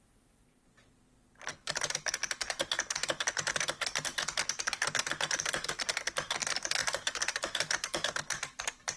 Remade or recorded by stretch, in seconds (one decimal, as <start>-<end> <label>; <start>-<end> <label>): 0.0-6.8 recorded; 6.8-9.0 remade